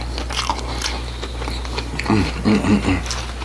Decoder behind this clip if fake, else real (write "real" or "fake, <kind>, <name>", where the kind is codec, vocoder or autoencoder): real